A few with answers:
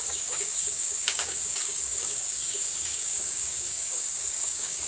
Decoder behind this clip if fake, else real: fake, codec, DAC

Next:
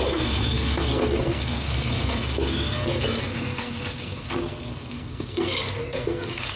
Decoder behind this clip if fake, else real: fake, codec, SNAC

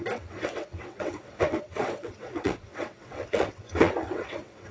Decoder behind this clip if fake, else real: fake, vocoder, WaveNeXt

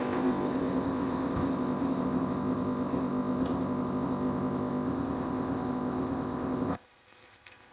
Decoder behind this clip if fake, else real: fake, codec, ZipCodec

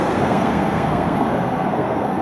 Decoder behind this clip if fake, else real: fake, codec, SNAC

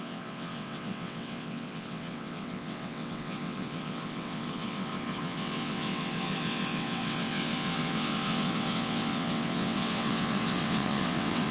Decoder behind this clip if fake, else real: fake, vocoder, WaveNeXt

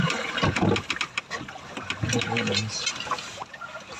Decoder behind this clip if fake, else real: real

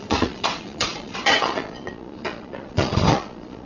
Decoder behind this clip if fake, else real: fake, vocoder, Vocos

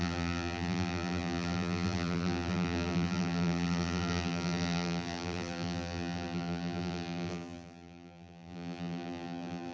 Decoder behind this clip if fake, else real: fake, vocoder, BigVGAN v2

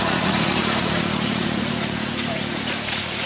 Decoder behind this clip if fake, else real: fake, vocoder, Vocos